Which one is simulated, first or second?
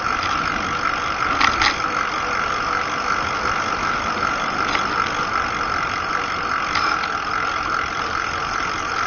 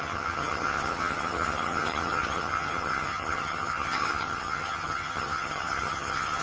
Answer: second